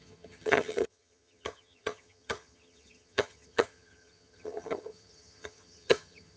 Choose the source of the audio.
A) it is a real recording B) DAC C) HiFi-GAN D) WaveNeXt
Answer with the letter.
C